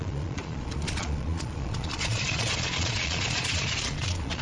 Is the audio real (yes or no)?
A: no